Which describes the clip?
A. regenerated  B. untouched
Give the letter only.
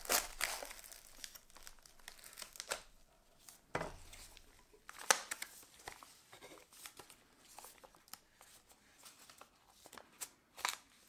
B